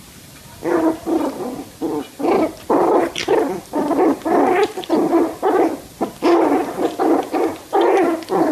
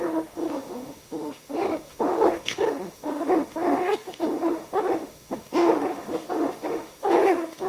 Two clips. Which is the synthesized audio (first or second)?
second